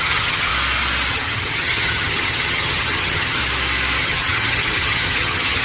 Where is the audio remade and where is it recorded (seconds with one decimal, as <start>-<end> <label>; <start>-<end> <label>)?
0.0-0.5 remade; 0.5-1.1 recorded; 1.1-3.4 remade; 3.4-4.0 recorded; 4.0-5.6 remade